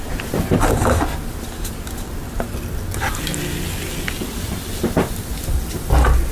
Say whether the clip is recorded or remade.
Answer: recorded